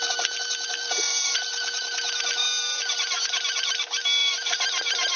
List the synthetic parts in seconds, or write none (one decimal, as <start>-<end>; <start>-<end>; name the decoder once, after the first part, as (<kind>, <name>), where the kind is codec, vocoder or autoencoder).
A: none